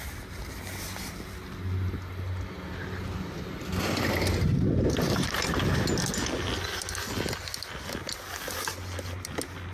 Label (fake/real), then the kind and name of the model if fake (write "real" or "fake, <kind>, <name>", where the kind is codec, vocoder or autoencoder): real